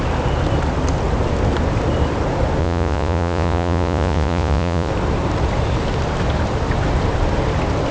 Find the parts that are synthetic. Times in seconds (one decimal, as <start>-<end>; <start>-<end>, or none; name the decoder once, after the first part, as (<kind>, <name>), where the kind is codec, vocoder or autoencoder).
2.6-4.9 (vocoder, Vocos)